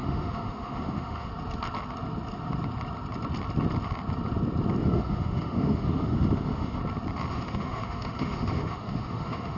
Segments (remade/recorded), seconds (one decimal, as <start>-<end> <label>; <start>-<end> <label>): 0.0-1.3 remade; 1.3-4.8 recorded; 4.8-6.8 remade; 6.8-7.3 recorded; 7.3-9.6 remade